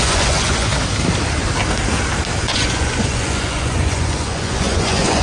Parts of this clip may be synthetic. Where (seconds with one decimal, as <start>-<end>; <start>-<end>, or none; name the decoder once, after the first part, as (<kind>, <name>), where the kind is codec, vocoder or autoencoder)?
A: 0.0-0.7 (vocoder, Vocos); 2.4-5.2